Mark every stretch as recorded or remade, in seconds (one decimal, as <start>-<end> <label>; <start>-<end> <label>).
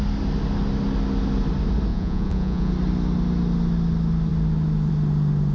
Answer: 0.0-1.9 recorded; 1.9-2.7 remade; 2.7-5.5 recorded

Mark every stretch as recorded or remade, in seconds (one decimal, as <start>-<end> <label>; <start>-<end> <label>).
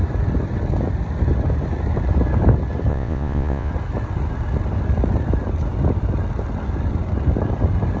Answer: 0.0-2.9 recorded; 2.9-3.7 remade; 3.7-8.0 recorded